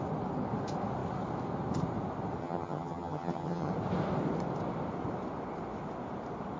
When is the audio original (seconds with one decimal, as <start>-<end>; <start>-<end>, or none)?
0.0-2.4; 3.7-6.6